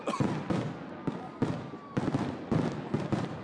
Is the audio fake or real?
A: real